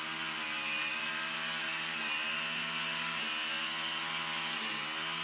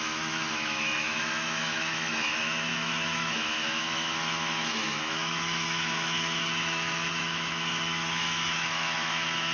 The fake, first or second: second